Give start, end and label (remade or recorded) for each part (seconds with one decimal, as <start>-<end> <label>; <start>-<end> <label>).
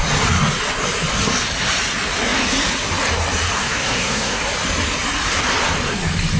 0.0-3.6 recorded; 3.6-4.4 remade; 4.4-6.4 recorded